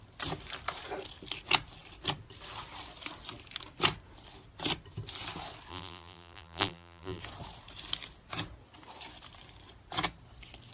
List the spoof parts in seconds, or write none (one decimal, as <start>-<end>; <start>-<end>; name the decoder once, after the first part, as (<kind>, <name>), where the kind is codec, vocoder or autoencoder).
5.7-7.2 (vocoder, BigVGAN v2)